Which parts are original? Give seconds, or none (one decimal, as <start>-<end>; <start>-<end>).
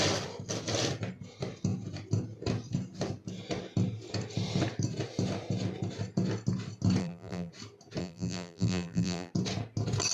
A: 0.0-7.0; 7.5-8.0; 9.3-10.1